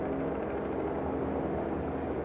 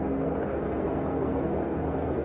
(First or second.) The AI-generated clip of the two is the second